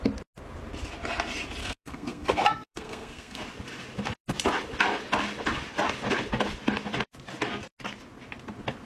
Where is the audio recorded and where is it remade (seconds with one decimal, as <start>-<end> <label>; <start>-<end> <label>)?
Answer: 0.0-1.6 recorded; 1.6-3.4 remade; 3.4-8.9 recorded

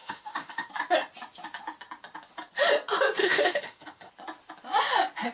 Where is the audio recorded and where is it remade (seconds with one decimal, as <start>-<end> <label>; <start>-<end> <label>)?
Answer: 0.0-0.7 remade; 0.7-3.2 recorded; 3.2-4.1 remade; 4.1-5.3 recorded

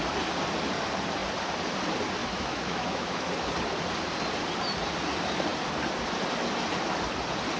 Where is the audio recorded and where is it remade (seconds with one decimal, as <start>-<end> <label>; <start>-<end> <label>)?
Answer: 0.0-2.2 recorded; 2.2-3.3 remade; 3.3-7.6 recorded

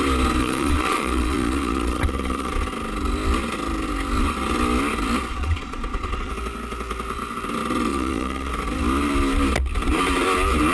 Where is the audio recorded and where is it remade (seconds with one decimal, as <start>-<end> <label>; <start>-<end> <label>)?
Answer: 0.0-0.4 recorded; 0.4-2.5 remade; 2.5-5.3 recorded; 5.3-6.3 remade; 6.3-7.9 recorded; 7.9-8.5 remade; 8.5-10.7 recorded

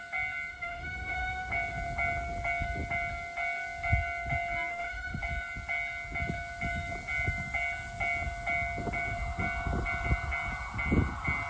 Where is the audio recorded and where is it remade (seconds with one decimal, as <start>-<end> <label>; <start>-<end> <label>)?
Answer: 0.0-0.5 recorded; 0.5-1.5 remade; 1.5-4.7 recorded; 4.7-5.2 remade; 5.2-11.5 recorded

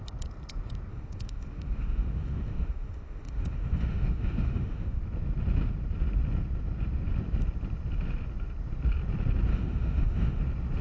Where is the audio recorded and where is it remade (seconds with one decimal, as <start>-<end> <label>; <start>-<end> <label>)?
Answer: 0.0-0.9 recorded; 0.9-5.0 remade; 5.0-9.5 recorded; 9.5-10.4 remade; 10.4-10.8 recorded